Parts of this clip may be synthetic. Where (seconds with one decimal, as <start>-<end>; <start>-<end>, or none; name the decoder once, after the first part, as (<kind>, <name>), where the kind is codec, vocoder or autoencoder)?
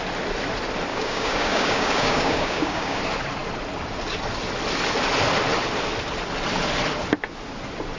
0.9-3.0 (codec, DAC)